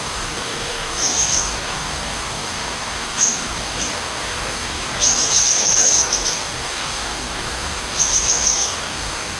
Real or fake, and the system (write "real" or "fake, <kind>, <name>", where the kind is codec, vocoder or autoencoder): fake, codec, DAC